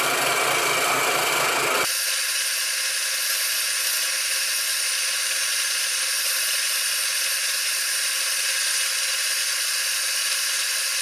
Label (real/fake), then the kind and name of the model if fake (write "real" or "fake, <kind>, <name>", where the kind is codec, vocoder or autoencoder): real